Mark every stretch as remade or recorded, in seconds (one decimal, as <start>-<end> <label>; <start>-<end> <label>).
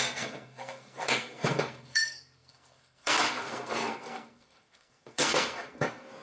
0.0-6.2 remade